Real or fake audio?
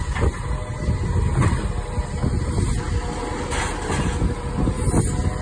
real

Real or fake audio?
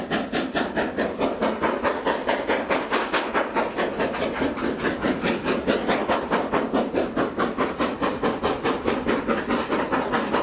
real